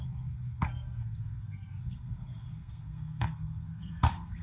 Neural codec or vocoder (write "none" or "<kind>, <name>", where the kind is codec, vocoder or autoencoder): codec, SNAC